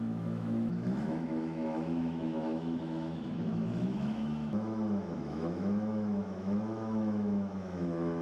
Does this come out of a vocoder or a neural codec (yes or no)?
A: yes